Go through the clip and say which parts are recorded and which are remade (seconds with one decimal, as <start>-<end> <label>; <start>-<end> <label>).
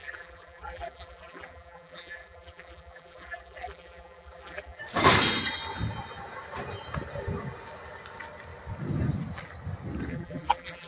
0.0-4.8 remade; 4.8-10.1 recorded; 10.1-10.9 remade